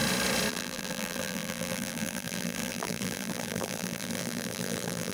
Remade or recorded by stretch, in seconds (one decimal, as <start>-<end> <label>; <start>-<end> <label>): 0.0-0.5 recorded; 0.5-5.1 remade